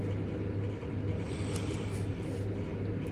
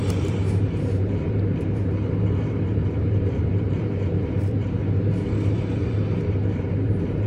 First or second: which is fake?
second